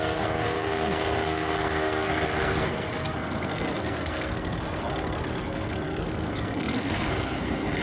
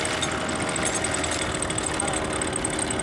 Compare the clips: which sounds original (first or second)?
second